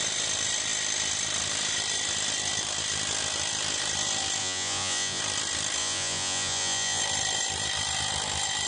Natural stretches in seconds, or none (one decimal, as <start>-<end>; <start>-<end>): 0.0-4.4; 5.2-5.8; 7.0-8.7